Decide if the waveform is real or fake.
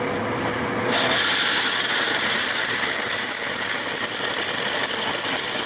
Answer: real